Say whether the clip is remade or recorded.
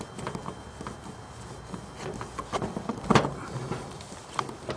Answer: recorded